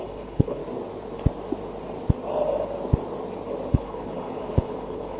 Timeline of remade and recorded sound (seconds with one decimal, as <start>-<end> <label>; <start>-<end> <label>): 0.0-0.6 remade; 0.6-3.7 recorded; 3.7-5.2 remade